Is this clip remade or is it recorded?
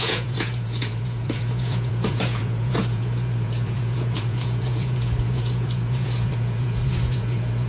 remade